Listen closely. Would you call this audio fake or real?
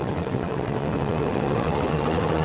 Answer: fake